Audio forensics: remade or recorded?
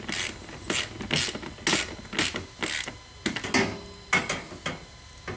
recorded